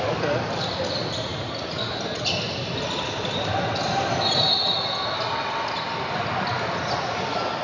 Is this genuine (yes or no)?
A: yes